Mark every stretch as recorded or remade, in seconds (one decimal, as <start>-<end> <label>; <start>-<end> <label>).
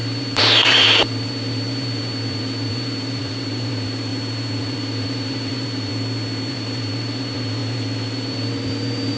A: 0.0-4.1 remade; 4.1-4.6 recorded; 4.6-5.9 remade; 5.9-6.5 recorded; 6.5-9.2 remade